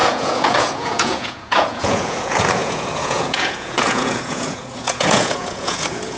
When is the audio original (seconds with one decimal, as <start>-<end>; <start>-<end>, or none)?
none